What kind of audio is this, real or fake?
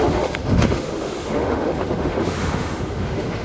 fake